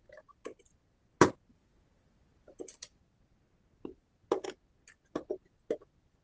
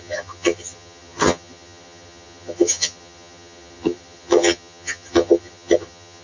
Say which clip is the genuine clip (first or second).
first